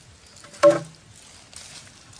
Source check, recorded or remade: recorded